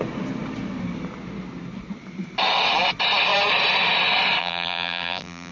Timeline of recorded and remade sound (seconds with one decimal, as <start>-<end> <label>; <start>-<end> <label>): 0.0-4.4 recorded; 4.4-5.5 remade